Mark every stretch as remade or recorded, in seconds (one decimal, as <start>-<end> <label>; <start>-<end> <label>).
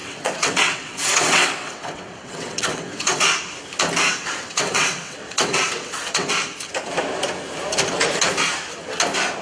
0.0-3.2 remade; 3.2-4.1 recorded; 4.1-6.3 remade; 6.3-9.4 recorded